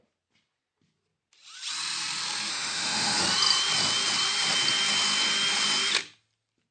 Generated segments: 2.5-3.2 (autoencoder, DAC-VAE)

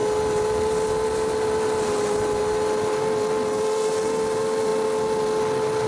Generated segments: none

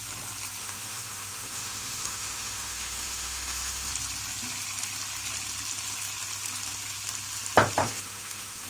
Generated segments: 0.6-3.9 (autoencoder, DAC-VAE); 7.8-8.7

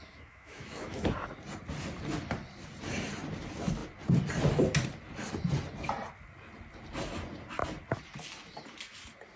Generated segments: 0.0-1.1 (autoencoder, DAC-VAE)

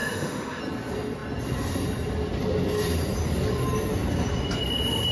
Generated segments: 0.0-0.6 (autoencoder, DAC-VAE)

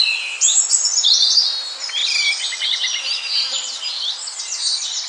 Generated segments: none

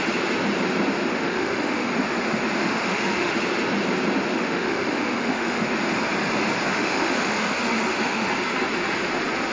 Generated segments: 1.1-1.9 (autoencoder, DAC-VAE); 2.6-3.3; 4.3-5.6; 6.7-8.3